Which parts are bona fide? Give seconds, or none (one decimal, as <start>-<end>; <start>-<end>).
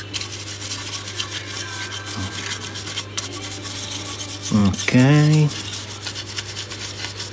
0.0-7.3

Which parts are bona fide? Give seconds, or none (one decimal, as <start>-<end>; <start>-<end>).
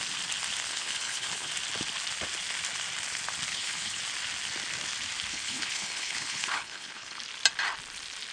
0.0-0.7; 1.5-3.5; 4.0-5.3; 7.2-8.3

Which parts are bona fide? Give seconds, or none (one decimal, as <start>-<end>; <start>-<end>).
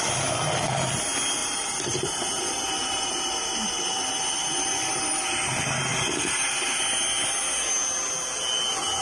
0.0-1.4; 5.3-5.9; 6.8-9.0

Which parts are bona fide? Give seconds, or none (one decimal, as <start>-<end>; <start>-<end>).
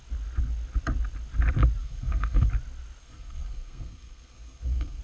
0.0-1.8; 2.5-3.0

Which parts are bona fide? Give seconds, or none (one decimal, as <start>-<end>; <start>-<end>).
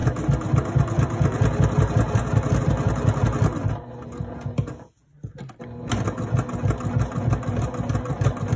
0.0-8.6